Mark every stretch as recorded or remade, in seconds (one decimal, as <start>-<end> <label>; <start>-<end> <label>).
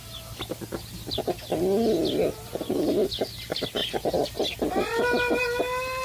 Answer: 0.0-6.0 recorded